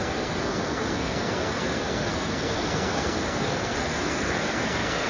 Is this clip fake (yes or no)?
yes